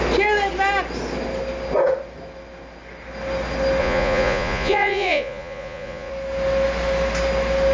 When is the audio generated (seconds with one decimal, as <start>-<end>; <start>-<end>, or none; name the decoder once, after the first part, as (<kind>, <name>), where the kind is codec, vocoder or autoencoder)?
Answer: 3.8-6.1 (vocoder, Vocos)